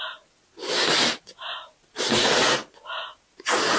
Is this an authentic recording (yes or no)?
yes